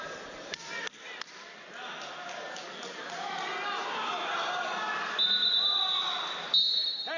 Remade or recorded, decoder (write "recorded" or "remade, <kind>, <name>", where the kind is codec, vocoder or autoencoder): recorded